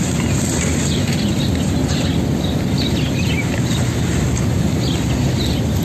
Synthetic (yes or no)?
no